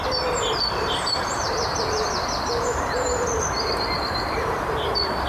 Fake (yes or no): yes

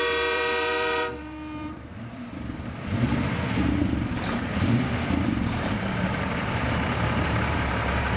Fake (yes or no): yes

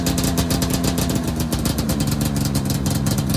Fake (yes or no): no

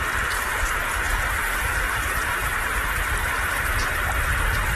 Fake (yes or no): yes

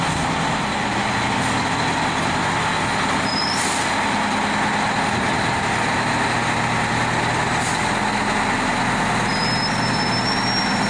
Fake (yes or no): no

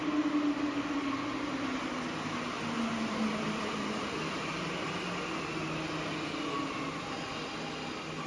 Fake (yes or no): no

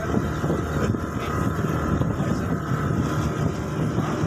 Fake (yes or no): no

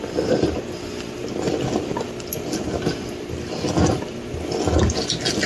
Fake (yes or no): no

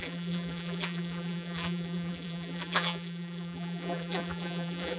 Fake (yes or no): yes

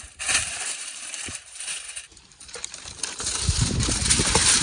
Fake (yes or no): yes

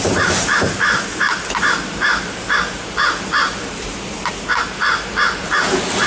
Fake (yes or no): no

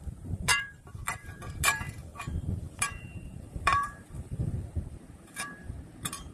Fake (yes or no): yes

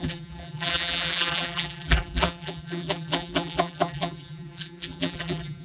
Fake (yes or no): yes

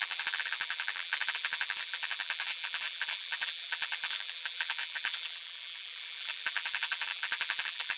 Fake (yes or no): yes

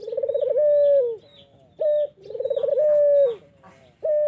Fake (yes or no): no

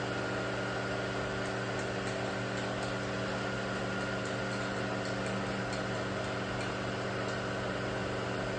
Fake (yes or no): no